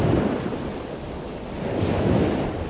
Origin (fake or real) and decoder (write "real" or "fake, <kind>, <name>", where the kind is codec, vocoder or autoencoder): real